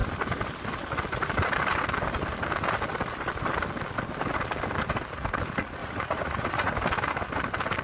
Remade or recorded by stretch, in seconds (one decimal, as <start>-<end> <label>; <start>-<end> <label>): 0.0-5.8 recorded; 5.8-6.7 remade; 6.7-7.8 recorded